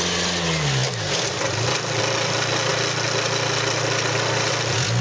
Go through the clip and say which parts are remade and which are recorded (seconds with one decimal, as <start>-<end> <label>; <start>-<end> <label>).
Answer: 0.0-5.0 recorded